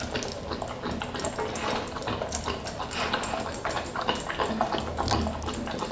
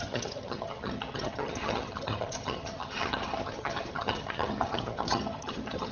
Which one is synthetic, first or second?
second